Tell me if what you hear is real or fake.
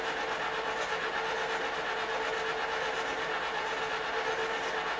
real